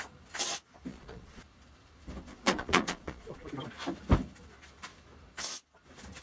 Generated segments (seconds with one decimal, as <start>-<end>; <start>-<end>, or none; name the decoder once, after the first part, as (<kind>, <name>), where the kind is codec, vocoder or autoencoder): 0.9-1.4 (vocoder, Vocos); 2.3-3.5